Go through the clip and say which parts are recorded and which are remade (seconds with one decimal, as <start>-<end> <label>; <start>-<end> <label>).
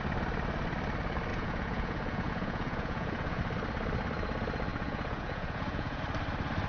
0.0-1.3 recorded; 1.3-3.4 remade; 3.4-4.7 recorded; 4.7-6.0 remade; 6.0-6.7 recorded